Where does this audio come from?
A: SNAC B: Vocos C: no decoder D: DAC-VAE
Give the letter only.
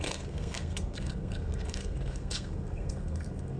A